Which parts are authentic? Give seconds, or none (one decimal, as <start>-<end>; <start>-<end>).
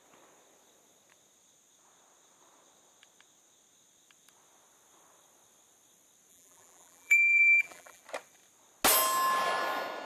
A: 0.0-6.3; 8.0-10.0